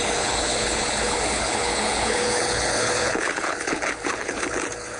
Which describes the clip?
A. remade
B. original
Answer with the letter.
A